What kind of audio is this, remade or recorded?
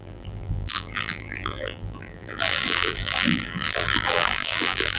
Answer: remade